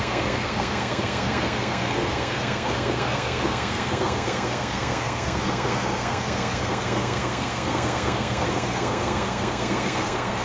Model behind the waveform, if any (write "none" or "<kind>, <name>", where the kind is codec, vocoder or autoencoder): codec, SNAC